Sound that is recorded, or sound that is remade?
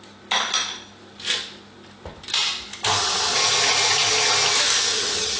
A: recorded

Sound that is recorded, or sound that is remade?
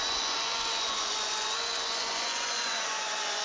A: remade